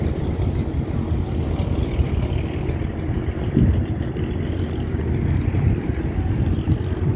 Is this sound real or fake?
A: real